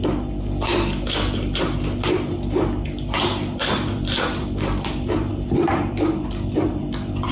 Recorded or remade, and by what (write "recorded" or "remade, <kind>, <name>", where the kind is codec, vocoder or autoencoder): remade, vocoder, BigVGAN v2